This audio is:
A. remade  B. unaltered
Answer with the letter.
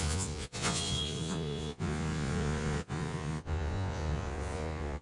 A